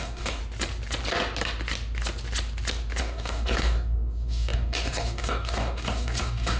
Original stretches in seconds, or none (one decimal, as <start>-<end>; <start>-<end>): 0.4-3.0